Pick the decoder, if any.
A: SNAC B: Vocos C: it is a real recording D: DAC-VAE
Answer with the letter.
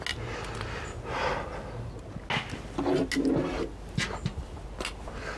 C